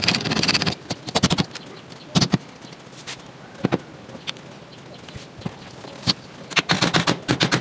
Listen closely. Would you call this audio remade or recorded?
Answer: recorded